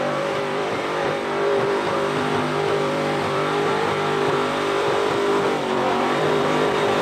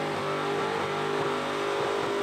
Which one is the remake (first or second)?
first